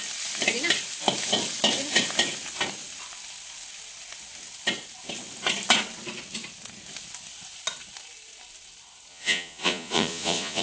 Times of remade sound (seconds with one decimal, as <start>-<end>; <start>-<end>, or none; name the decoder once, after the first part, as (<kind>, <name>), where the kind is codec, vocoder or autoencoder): 9.1-10.6 (vocoder, Vocos)